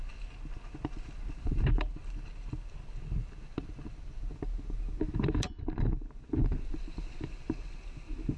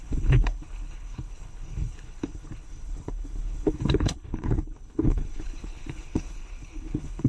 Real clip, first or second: first